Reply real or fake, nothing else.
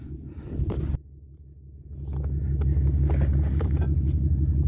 real